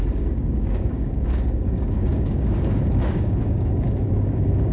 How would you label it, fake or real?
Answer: fake